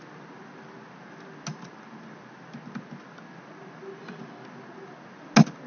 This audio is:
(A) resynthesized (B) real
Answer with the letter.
B